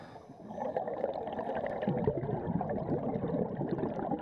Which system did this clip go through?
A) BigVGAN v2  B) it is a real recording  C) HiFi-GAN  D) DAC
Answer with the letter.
B